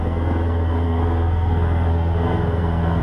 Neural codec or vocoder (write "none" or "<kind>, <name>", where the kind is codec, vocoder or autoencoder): codec, SNAC